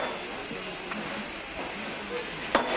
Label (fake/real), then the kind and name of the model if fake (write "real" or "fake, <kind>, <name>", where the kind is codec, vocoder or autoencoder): real